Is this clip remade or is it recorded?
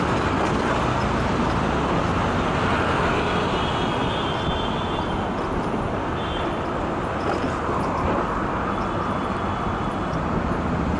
recorded